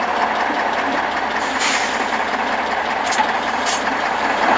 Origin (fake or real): real